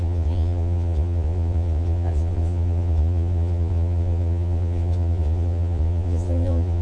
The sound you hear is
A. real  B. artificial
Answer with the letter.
B